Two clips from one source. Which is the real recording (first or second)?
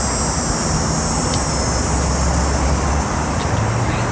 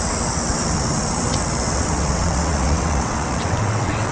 first